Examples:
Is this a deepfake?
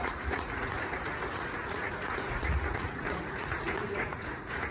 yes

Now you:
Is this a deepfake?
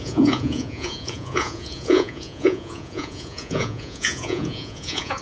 yes